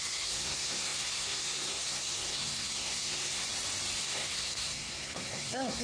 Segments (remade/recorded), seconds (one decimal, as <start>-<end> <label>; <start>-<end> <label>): 0.0-3.4 remade; 3.4-4.0 recorded; 4.0-5.8 remade